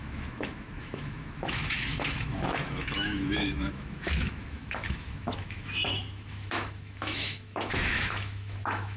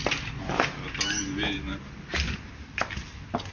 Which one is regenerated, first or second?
first